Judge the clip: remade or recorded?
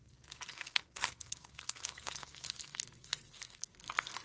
remade